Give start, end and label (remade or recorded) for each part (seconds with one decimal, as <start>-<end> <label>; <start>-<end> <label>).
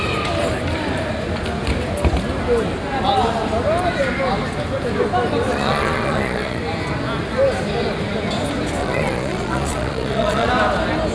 0.0-5.5 recorded; 5.5-6.6 remade; 6.6-8.8 recorded; 8.8-10.5 remade; 10.5-11.1 recorded